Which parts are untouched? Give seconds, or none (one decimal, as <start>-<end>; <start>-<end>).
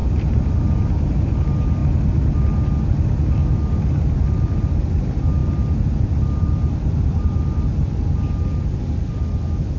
1.3-9.8